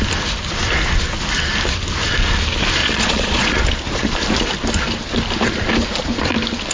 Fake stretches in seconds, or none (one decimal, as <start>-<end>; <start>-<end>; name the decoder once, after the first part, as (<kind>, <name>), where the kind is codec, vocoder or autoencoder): 2.8-3.6 (vocoder, Vocos)